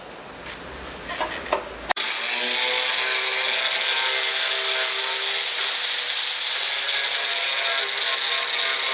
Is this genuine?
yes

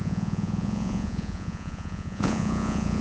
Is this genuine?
no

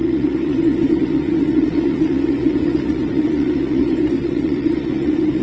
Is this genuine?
no